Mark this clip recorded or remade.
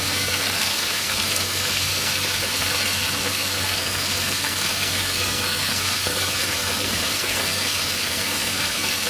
remade